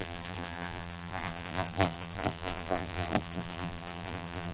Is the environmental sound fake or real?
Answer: fake